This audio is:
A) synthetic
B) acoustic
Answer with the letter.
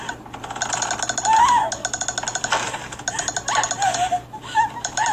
B